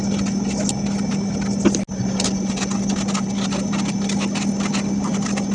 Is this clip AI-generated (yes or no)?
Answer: no